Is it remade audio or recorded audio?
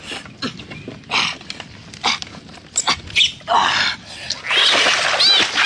recorded